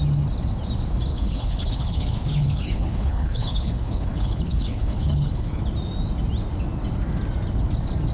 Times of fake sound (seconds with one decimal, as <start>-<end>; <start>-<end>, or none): 1.1-5.6